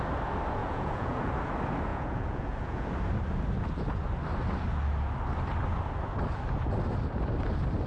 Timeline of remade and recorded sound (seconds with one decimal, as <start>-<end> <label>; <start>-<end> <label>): 0.0-0.6 recorded; 0.6-1.3 remade; 1.3-1.9 recorded; 1.9-2.9 remade; 2.9-7.9 recorded